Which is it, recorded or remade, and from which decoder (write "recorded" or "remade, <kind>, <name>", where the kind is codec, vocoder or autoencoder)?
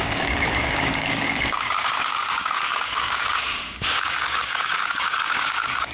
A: remade, codec, DAC